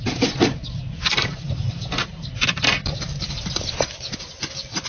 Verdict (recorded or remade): remade